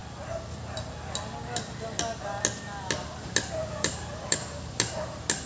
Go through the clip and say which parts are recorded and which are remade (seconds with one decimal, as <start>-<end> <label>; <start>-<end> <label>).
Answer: 0.0-5.5 recorded